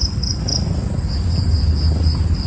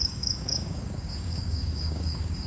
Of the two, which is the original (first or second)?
first